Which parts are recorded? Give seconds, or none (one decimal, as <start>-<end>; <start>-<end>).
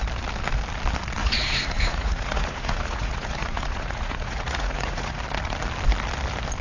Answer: 0.0-1.2; 5.2-6.6